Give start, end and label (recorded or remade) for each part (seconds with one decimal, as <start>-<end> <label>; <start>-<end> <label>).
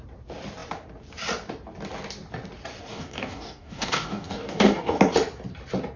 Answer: 0.0-2.9 recorded; 2.9-5.0 remade; 5.0-6.0 recorded